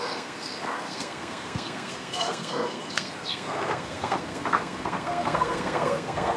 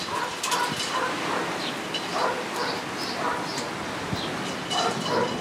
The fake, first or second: first